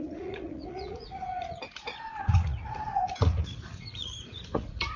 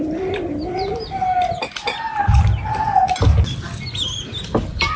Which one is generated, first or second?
first